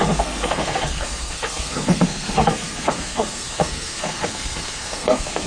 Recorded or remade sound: remade